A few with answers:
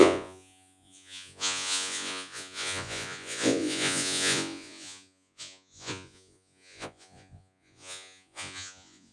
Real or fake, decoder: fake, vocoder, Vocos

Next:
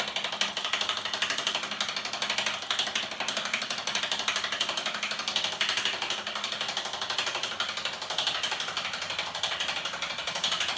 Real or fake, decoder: real